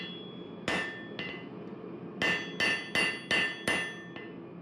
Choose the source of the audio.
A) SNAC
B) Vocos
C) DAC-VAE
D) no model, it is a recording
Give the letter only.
D